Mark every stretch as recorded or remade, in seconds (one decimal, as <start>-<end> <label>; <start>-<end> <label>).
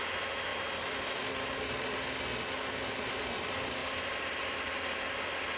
0.0-3.8 recorded; 3.8-4.4 remade; 4.4-5.6 recorded